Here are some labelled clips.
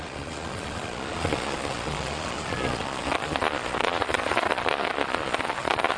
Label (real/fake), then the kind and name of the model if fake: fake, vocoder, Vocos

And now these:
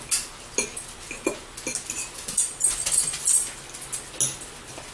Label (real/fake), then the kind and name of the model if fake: real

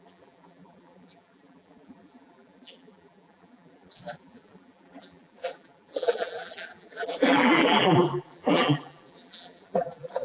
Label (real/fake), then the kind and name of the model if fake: fake, vocoder, BigVGAN v2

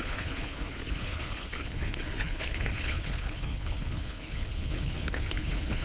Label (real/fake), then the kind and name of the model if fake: fake, codec, HILCodec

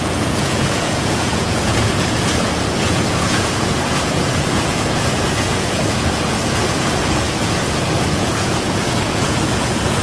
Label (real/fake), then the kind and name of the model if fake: fake, vocoder, Vocos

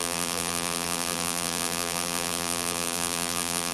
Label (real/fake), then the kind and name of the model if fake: fake, vocoder, BigVGAN v2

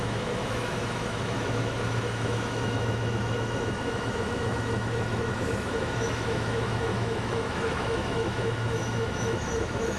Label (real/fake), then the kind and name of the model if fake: fake, autoencoder, DAC-VAE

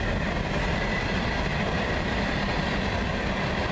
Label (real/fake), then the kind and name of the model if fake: real